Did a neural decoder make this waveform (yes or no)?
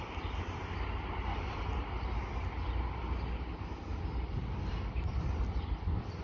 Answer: no